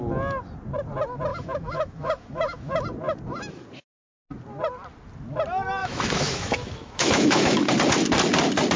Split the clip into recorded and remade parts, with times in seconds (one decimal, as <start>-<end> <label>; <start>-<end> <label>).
0.0-1.3 recorded; 1.3-2.8 remade; 2.8-5.8 recorded; 5.8-7.7 remade; 7.7-8.8 recorded